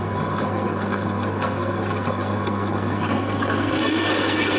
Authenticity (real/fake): fake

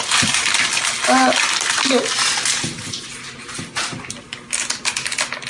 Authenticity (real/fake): real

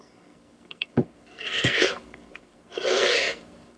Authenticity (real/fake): fake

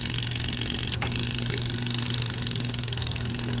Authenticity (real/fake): fake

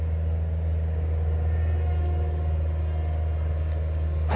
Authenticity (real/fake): real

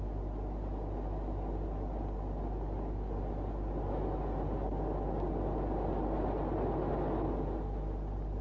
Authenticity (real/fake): real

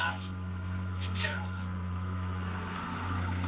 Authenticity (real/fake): fake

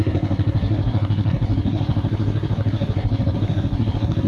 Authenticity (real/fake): fake